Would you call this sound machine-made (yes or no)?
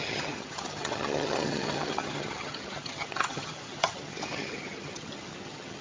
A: yes